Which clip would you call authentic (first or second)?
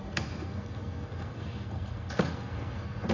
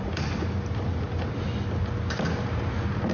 second